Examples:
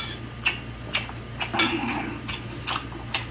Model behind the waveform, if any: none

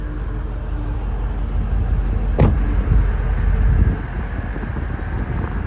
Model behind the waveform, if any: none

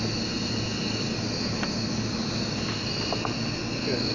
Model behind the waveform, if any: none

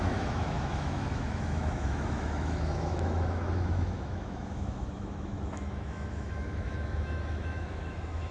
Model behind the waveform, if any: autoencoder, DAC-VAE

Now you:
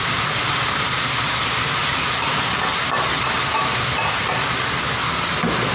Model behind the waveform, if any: none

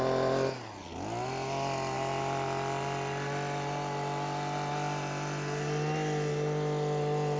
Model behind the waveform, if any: none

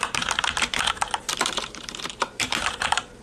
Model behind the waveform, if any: vocoder, BigVGAN v2